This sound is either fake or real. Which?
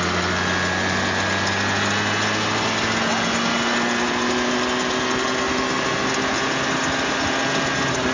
real